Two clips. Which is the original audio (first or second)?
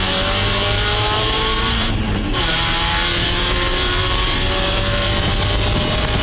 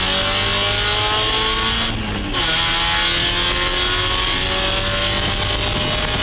second